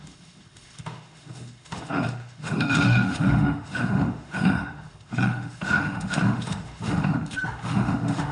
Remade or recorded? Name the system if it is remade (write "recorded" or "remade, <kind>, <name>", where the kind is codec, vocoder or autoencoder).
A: remade, autoencoder, DAC-VAE